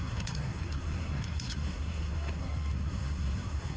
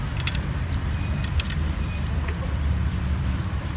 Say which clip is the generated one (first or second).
first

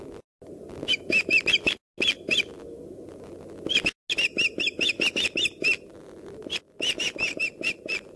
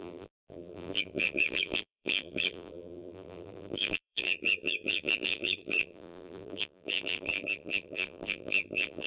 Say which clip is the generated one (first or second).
second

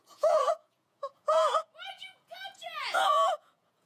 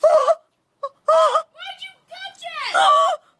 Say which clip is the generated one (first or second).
first